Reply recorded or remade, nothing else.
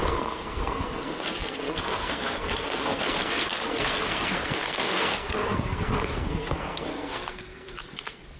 remade